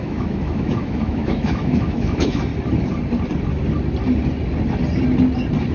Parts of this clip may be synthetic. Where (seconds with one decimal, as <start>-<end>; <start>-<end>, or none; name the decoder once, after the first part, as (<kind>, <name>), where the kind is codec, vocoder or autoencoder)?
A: 0.0-2.5 (autoencoder, DAC-VAE)

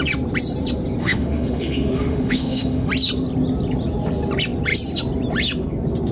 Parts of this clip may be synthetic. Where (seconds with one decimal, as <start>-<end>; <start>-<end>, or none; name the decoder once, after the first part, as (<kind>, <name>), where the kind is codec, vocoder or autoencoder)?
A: 1.0-2.9 (autoencoder, DAC-VAE)

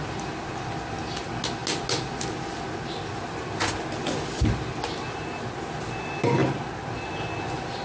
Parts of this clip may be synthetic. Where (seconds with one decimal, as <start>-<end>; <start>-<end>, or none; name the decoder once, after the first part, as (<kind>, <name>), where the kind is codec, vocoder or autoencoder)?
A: none

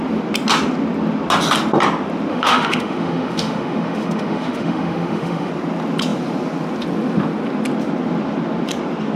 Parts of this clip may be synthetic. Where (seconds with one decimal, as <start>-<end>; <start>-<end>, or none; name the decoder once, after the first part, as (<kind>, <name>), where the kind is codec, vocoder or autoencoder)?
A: 2.3-5.5 (autoencoder, DAC-VAE)

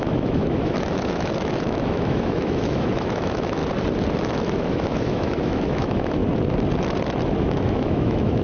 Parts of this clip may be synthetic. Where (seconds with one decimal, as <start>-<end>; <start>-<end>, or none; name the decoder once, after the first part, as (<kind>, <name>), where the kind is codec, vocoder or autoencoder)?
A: 0.0-3.6 (autoencoder, DAC-VAE); 4.2-6.2; 7.4-8.4